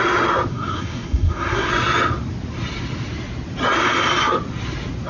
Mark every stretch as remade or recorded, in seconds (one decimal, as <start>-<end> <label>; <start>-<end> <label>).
0.0-0.5 recorded; 0.5-1.7 remade; 1.7-5.1 recorded